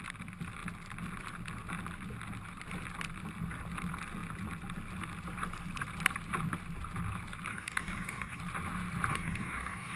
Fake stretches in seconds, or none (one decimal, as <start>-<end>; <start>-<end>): 7.5-8.4; 9.1-10.0